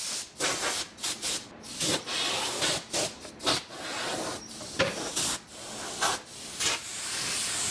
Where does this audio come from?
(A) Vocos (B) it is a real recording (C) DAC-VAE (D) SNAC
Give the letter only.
B